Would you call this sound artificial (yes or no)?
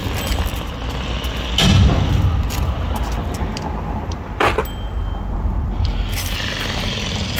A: no